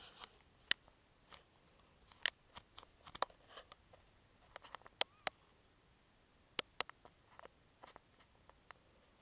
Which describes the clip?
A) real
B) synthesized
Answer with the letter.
A